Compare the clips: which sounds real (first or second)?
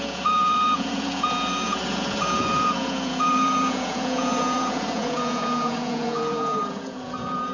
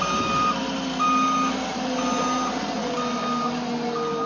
second